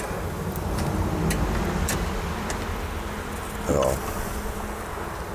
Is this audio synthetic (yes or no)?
no